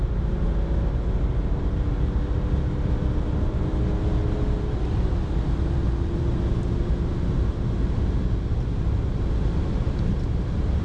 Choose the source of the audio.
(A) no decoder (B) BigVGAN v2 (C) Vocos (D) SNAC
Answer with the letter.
A